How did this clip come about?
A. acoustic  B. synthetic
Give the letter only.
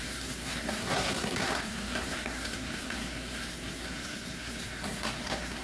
B